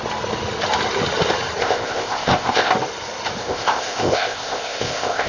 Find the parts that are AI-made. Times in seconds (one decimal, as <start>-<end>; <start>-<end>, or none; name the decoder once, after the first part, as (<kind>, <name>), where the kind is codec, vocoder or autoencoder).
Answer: 1.6-2.7 (codec, ZipCodec); 3.4-5.3